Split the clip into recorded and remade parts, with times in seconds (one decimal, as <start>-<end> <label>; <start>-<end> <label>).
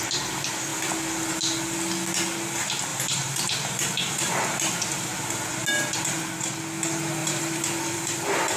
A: 0.0-2.9 recorded; 2.9-5.1 remade; 5.1-7.2 recorded; 7.2-8.6 remade